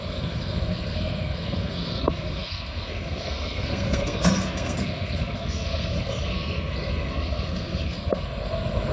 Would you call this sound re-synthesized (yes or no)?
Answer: yes